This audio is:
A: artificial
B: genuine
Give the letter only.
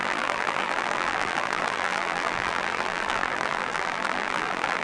A